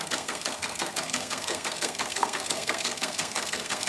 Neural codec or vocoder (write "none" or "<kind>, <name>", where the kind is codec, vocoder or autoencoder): codec, SNAC